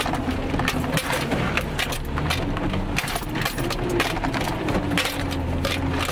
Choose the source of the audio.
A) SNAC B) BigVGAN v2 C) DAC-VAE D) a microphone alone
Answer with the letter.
D